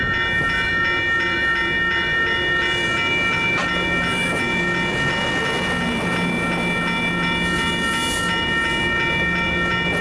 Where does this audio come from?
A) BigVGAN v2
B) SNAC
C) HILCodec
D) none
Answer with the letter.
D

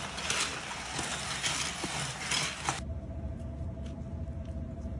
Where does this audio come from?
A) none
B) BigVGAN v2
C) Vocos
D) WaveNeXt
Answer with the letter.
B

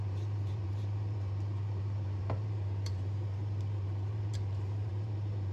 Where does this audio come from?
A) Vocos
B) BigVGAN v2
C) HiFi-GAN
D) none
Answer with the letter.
B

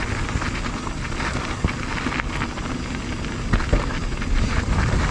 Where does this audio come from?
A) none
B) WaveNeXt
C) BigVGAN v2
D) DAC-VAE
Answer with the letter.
A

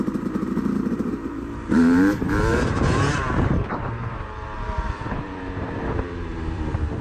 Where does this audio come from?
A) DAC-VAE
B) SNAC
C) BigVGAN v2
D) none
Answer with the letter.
C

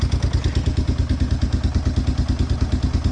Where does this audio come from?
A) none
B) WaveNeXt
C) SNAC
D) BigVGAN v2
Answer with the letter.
A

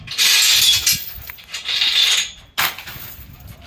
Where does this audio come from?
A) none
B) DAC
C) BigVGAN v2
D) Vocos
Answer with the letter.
A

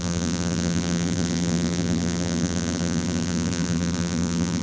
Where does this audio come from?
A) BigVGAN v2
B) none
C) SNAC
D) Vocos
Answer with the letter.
A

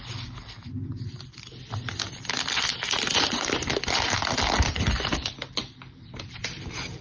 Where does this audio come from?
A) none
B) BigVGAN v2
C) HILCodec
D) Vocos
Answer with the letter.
B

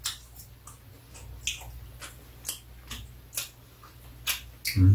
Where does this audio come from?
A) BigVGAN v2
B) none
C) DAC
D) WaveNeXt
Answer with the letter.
B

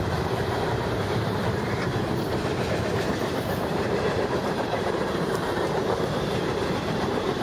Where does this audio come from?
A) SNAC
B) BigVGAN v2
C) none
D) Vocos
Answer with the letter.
B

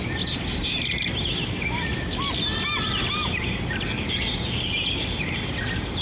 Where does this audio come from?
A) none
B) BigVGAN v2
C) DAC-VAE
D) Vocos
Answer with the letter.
A